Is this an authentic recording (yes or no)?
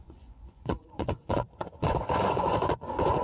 no